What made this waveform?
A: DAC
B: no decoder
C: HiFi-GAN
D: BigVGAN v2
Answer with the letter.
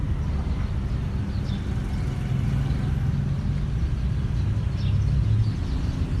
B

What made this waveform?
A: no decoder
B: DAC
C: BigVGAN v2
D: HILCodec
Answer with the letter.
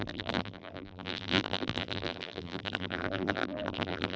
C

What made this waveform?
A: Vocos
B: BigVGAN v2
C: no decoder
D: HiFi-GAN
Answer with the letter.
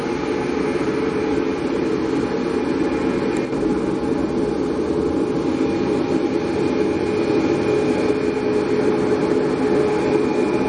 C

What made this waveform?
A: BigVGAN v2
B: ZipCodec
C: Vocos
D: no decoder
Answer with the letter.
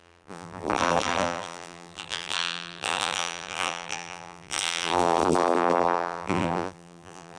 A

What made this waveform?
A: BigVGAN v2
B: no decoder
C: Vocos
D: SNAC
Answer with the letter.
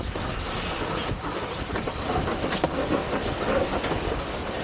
B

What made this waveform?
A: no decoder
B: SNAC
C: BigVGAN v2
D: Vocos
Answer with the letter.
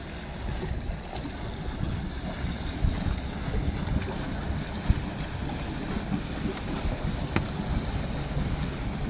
A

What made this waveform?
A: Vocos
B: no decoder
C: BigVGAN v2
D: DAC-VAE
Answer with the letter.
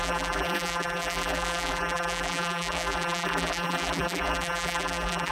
C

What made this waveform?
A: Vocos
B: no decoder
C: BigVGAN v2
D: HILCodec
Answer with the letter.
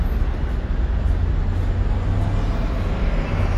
B